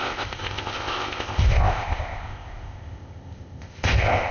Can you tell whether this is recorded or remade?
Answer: remade